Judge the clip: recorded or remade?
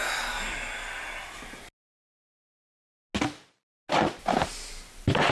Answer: recorded